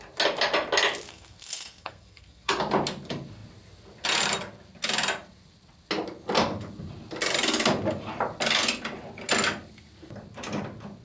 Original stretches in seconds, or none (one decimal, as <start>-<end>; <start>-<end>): 0.0-1.1; 2.5-11.0